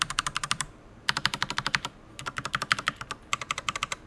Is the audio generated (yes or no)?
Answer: yes